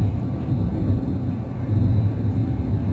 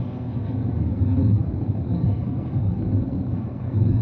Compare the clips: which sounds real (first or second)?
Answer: first